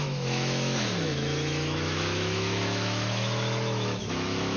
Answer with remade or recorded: remade